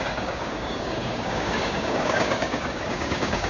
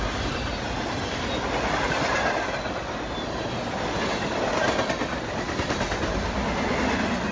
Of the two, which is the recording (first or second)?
second